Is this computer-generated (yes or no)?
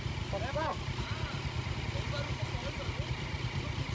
no